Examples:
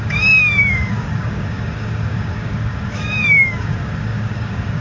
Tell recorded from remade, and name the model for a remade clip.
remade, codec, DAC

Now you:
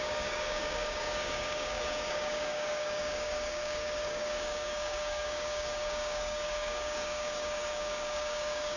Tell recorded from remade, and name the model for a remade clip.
remade, codec, DAC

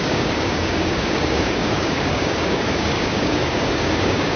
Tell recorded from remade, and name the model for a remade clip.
remade, codec, DAC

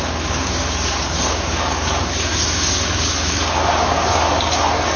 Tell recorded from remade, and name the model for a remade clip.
remade, codec, DAC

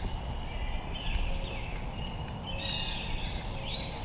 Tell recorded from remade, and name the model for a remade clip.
recorded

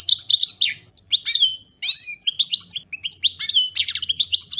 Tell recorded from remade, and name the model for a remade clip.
recorded